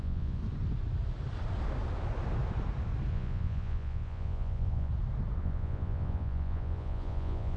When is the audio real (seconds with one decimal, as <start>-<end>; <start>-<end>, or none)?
0.4-3.1; 4.9-5.4